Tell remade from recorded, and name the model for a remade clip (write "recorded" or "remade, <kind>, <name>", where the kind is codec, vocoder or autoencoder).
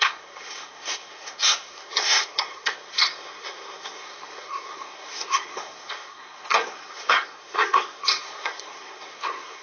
remade, codec, SNAC